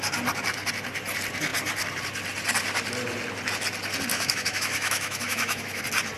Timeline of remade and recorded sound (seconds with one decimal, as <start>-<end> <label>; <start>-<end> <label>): 0.0-4.1 recorded; 4.1-5.8 remade; 5.8-6.2 recorded